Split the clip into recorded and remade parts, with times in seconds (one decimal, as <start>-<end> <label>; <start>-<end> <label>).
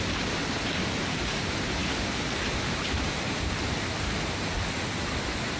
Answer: 0.0-0.4 remade; 0.4-1.0 recorded; 1.0-5.6 remade